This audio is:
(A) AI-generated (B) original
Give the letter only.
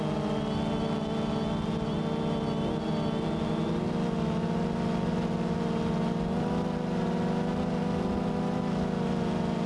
B